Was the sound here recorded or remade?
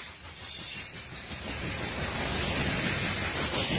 recorded